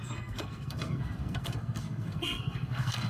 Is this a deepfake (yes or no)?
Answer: yes